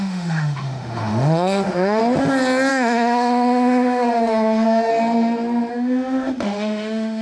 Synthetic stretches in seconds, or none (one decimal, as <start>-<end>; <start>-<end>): 0.0-2.0; 2.7-4.9; 5.7-7.2